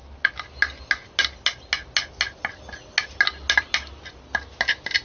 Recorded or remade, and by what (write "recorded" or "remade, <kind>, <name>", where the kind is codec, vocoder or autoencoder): recorded